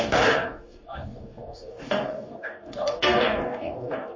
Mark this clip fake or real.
fake